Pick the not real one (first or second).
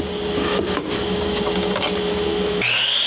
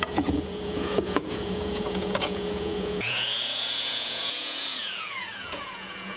second